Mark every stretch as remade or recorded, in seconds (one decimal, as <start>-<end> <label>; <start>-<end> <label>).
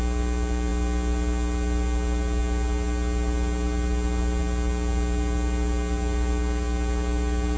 0.0-7.6 recorded